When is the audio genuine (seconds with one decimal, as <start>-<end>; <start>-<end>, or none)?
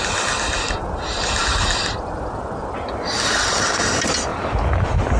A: 0.0-5.2